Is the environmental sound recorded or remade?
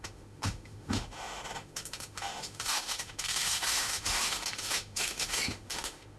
remade